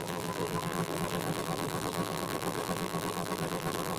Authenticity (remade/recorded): remade